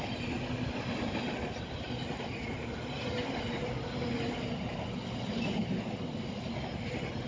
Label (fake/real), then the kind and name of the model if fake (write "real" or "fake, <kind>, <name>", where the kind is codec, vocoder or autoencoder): real